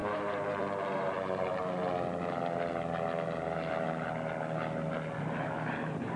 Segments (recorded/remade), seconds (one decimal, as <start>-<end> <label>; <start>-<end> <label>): 0.0-1.6 remade; 1.6-5.2 recorded; 5.2-6.2 remade

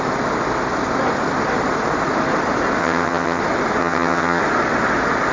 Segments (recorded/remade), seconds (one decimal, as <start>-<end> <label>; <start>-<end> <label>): 0.0-2.8 recorded; 2.8-3.4 remade; 3.4-3.8 recorded; 3.8-4.4 remade; 4.4-5.3 recorded

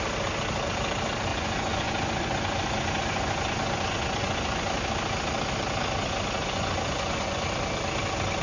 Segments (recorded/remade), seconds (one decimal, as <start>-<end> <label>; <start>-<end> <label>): 0.0-1.3 recorded; 1.3-4.7 remade; 4.7-6.4 recorded; 6.4-7.5 remade; 7.5-8.4 recorded

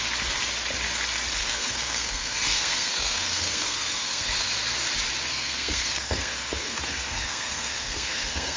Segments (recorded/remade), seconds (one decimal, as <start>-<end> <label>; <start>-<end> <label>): 0.0-1.4 recorded; 1.4-4.5 remade; 4.5-5.3 recorded; 5.3-8.6 remade

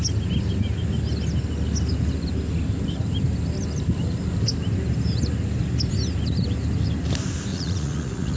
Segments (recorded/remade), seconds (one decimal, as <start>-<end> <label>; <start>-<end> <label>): 0.0-7.5 recorded; 7.5-8.4 remade

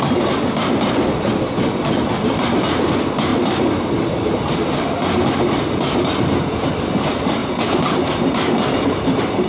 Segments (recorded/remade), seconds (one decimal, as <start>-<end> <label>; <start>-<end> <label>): 0.0-9.5 recorded

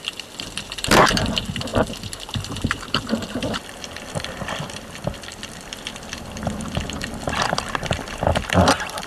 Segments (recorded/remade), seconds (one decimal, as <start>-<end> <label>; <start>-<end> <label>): 0.0-9.1 remade